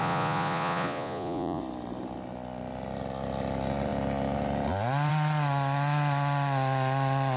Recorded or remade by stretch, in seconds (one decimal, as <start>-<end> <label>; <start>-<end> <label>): 0.0-1.6 remade; 1.6-7.4 recorded